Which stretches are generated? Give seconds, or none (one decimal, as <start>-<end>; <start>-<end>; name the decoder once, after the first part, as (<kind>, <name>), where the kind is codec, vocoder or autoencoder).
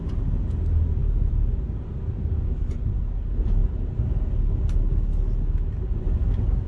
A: 1.0-1.5 (vocoder, BigVGAN v2)